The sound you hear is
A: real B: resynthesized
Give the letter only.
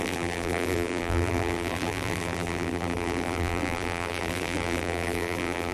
B